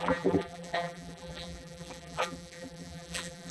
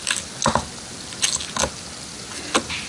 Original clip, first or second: second